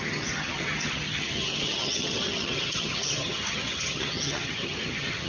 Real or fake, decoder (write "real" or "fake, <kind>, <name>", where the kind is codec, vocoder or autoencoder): fake, vocoder, HiFi-GAN